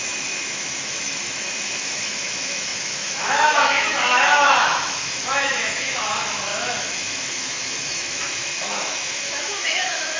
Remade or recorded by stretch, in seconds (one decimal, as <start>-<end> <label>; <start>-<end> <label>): 0.0-10.2 remade